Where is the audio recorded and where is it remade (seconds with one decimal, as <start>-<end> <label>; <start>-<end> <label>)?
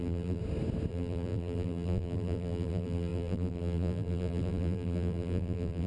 0.0-0.4 remade; 0.4-0.9 recorded; 0.9-5.9 remade